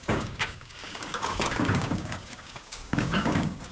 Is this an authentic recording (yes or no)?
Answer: no